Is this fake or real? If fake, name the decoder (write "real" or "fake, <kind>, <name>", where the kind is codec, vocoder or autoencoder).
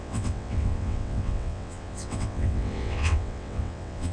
fake, vocoder, WaveNeXt